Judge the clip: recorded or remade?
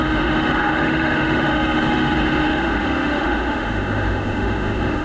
remade